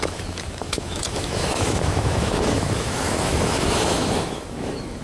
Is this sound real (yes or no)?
no